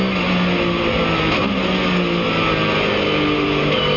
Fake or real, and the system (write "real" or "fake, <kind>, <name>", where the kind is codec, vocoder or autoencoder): real